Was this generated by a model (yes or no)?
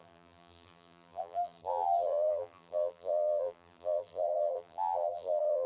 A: yes